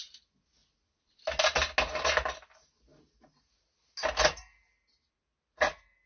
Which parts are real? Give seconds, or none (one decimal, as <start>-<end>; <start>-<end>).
0.0-6.1